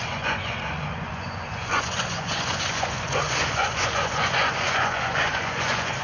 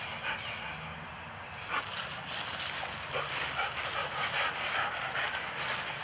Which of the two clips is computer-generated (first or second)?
first